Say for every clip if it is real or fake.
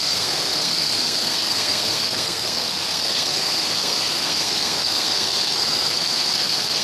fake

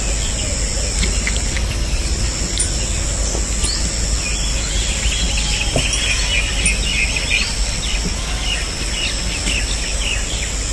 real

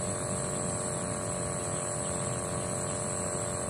real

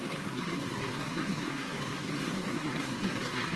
fake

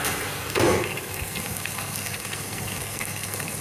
fake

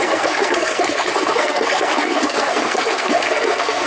fake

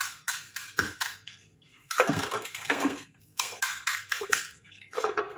fake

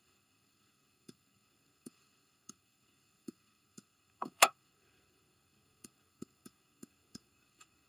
fake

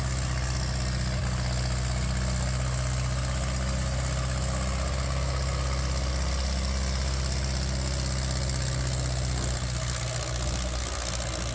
real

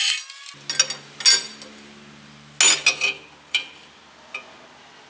real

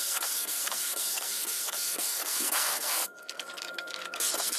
fake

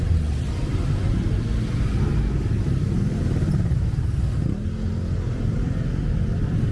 real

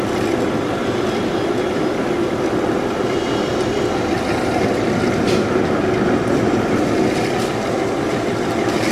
real